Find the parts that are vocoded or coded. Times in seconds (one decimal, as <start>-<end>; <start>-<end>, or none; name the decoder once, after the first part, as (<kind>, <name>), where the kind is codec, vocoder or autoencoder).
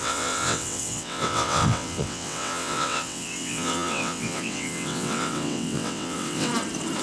0.0-6.5 (vocoder, WaveNeXt)